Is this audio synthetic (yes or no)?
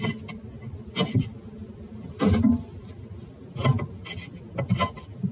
no